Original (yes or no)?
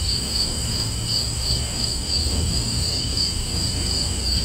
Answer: no